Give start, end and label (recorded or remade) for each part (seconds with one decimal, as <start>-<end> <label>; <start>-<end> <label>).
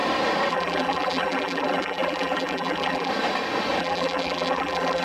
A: 0.0-0.5 recorded; 0.5-3.1 remade; 3.1-3.8 recorded; 3.8-5.0 remade